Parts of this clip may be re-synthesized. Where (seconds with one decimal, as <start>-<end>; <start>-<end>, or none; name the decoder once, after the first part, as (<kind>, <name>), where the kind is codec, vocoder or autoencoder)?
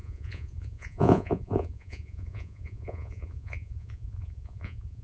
0.0-5.0 (vocoder, Vocos)